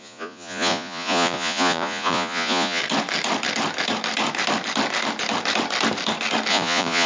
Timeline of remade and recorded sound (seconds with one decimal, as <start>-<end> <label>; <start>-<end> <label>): 0.0-2.8 remade; 2.8-6.5 recorded; 6.5-7.1 remade